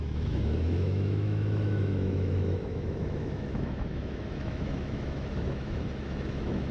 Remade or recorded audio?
remade